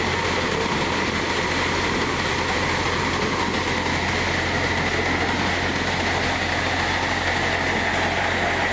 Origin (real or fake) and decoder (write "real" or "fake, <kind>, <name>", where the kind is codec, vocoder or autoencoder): real